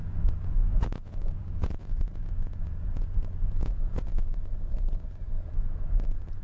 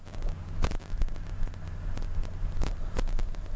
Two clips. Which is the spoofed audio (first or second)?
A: first